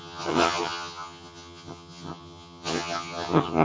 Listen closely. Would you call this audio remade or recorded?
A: remade